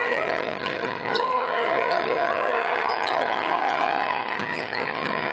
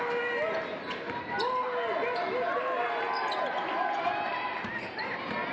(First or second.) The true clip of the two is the second